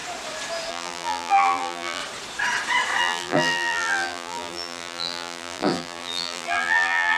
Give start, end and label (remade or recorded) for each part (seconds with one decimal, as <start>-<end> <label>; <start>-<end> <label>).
0.0-0.7 recorded; 0.7-2.0 remade; 2.0-3.0 recorded; 3.0-7.2 remade